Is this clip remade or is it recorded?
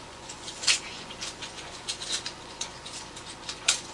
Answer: remade